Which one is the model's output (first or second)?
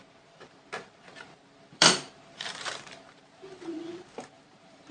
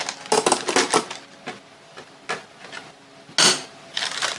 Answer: first